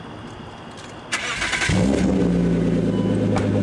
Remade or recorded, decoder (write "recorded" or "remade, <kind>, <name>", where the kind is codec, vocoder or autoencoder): recorded